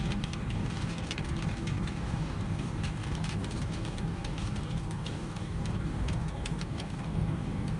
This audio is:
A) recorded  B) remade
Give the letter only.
B